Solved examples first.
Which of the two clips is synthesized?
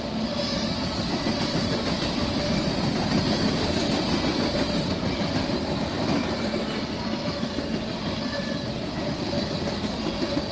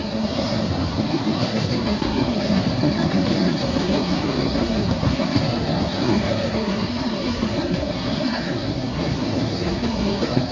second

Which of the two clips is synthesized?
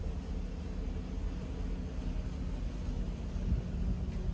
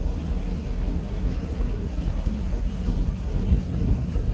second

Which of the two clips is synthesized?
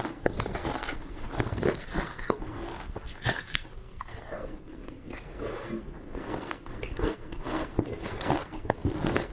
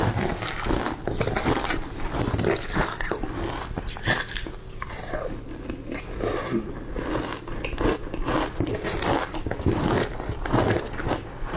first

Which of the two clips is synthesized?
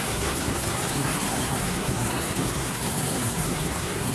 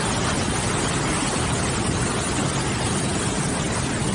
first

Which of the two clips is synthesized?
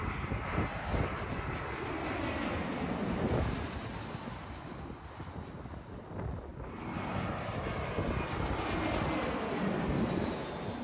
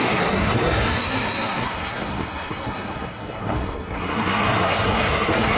second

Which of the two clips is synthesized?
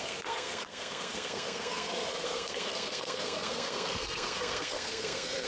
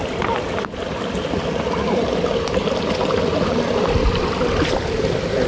first